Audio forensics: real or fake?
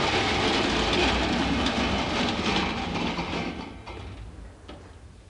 real